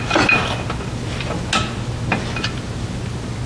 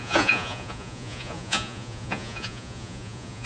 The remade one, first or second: second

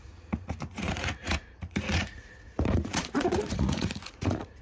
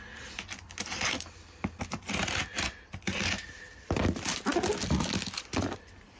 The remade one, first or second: first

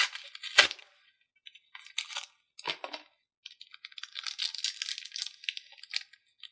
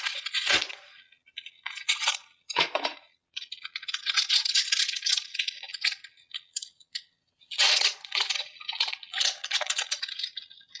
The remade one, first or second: second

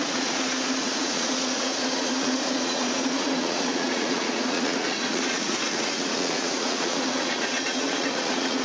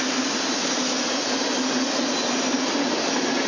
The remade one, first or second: first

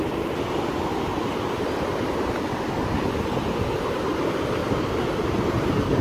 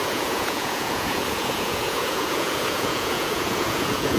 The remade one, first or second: second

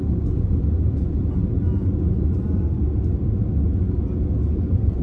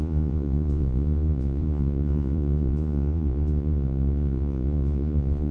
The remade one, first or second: second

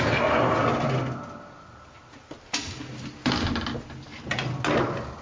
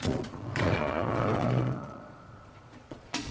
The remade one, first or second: second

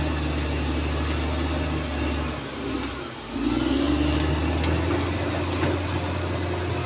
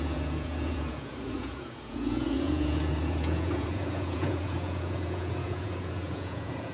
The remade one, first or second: second